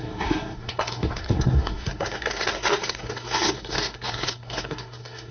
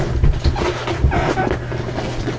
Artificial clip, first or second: first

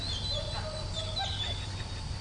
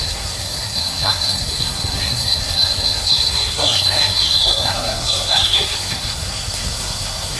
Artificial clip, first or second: second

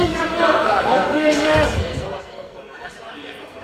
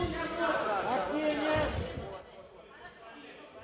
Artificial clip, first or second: first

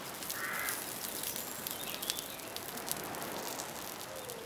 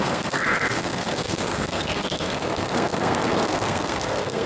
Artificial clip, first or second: second